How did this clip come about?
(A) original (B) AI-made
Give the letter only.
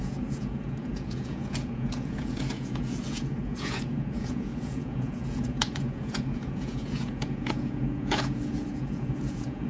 B